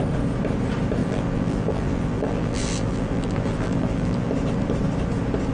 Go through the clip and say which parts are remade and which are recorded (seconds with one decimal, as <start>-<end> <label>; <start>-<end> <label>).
0.0-1.0 recorded; 1.0-4.3 remade; 4.3-5.5 recorded

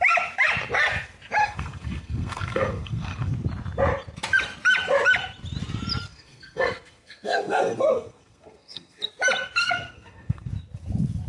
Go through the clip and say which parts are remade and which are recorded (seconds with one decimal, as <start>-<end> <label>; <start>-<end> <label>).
0.0-1.4 recorded; 1.4-3.3 remade; 3.3-6.1 recorded; 6.1-9.0 remade; 9.0-9.6 recorded; 9.6-10.5 remade; 10.5-11.3 recorded

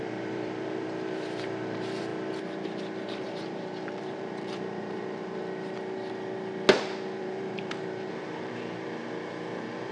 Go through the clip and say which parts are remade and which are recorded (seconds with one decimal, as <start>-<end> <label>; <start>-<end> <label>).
0.0-2.1 remade; 2.1-3.2 recorded; 3.2-5.4 remade; 5.4-7.2 recorded; 7.2-9.9 remade

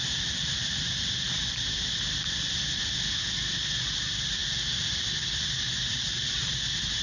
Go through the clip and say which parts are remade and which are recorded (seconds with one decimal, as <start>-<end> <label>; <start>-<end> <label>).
0.0-2.8 remade; 2.8-7.0 recorded

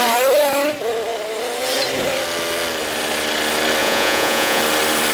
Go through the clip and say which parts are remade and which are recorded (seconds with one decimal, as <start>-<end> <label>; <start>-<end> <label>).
0.0-3.8 recorded; 3.8-4.6 remade; 4.6-5.1 recorded

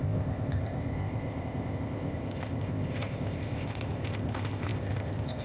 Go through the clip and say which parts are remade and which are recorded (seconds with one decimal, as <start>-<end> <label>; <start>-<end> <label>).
0.0-5.4 remade

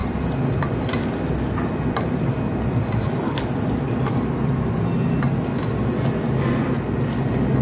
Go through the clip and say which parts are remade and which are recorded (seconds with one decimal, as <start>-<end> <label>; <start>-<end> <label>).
0.0-4.6 remade; 4.6-7.6 recorded